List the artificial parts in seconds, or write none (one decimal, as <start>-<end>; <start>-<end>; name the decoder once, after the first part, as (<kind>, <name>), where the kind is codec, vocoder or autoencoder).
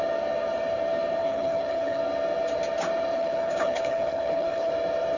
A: 1.2-2.0 (codec, HILCodec); 3.1-4.7